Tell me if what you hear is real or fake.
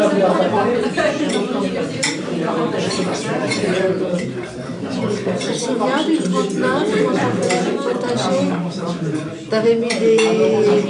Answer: fake